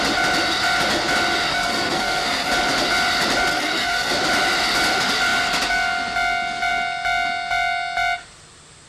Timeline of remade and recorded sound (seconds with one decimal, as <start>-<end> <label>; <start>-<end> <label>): 0.0-1.5 recorded; 1.5-2.5 remade; 2.5-3.5 recorded; 3.5-4.1 remade; 4.1-8.9 recorded